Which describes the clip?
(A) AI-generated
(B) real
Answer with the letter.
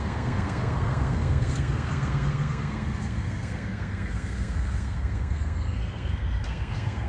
A